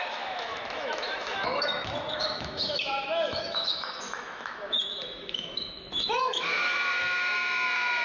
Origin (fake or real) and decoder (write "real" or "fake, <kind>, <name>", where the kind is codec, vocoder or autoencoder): fake, autoencoder, DAC-VAE